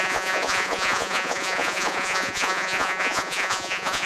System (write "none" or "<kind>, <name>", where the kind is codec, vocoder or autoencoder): vocoder, Vocos